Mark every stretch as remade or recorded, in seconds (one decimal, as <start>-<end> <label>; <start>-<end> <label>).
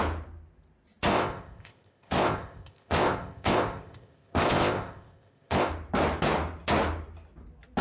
0.0-1.1 recorded; 1.1-5.7 remade; 5.7-7.8 recorded